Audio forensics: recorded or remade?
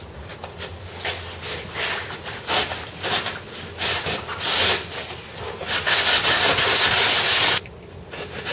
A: recorded